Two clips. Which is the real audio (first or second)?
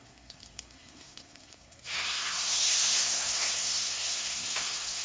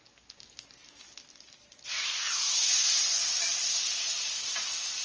second